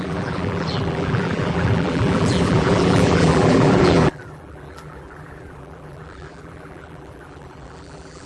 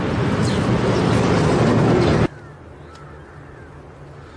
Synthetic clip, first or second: first